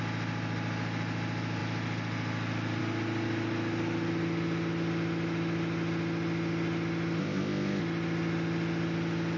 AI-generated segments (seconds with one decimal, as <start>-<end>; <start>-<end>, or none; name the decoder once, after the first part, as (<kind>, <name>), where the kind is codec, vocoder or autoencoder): 7.2-7.8 (codec, ZipCodec)